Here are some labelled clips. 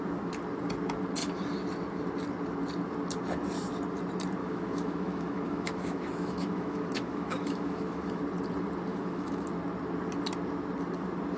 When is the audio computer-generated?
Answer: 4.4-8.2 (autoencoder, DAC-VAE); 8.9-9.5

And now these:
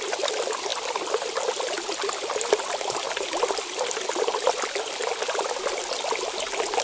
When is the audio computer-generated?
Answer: none

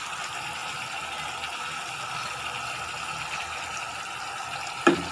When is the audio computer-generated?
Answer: none

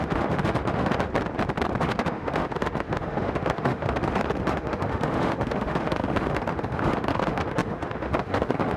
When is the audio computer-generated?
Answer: 0.0-1.1 (autoencoder, DAC-VAE); 1.8-8.8

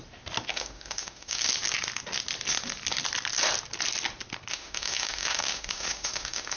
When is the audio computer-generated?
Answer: 0.5-1.5 (autoencoder, DAC-VAE); 4.5-6.6

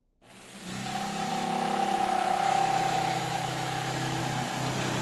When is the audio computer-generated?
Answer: 1.3-4.2 (autoencoder, DAC-VAE)